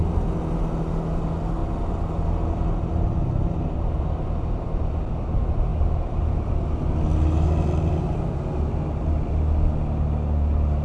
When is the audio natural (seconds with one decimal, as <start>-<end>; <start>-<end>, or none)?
0.0-10.8